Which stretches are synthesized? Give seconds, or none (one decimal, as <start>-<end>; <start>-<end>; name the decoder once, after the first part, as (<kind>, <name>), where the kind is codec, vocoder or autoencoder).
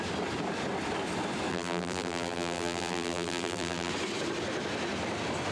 1.5-3.9 (vocoder, BigVGAN v2)